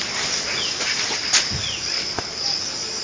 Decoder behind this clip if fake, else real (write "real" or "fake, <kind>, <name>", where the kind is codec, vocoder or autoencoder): real